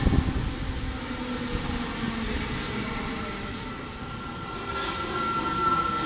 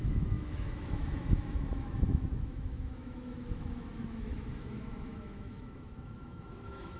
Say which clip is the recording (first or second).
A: first